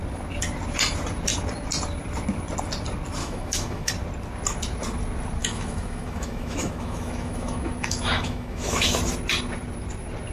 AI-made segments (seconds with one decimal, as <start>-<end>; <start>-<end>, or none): 3.2-3.9; 5.4-9.0